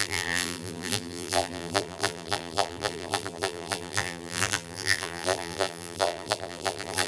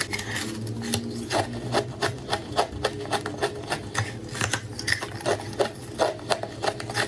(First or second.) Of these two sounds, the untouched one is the second